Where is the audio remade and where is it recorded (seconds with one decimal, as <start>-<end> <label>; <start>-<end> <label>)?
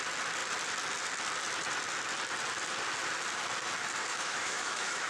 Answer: 0.0-4.1 recorded; 4.1-5.1 remade